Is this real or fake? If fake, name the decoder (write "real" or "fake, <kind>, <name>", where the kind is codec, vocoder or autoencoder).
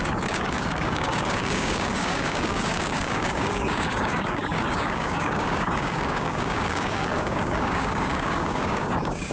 fake, codec, DAC